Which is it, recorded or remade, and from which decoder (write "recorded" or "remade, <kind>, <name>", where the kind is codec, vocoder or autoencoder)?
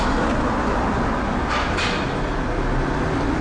recorded